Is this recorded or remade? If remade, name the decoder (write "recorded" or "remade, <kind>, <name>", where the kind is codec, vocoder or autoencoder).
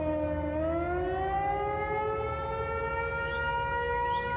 recorded